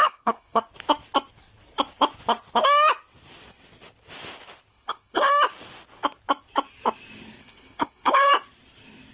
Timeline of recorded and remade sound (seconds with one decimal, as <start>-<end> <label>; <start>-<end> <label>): 0.0-0.6 remade; 0.6-4.7 recorded; 4.7-5.3 remade; 5.3-7.4 recorded; 7.4-8.3 remade; 8.3-9.1 recorded